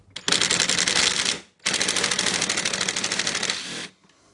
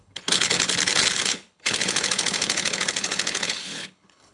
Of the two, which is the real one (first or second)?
first